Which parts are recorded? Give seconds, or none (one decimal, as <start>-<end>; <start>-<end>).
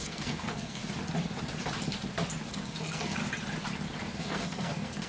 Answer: 0.8-2.5; 3.2-4.2